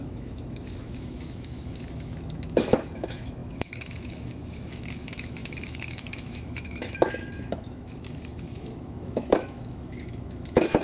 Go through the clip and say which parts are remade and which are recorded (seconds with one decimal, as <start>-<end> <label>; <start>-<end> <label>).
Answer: 0.0-10.8 remade